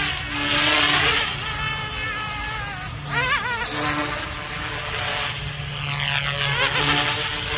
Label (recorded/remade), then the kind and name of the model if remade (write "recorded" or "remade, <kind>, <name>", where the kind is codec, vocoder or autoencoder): recorded